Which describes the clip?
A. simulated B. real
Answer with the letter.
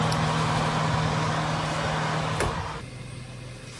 B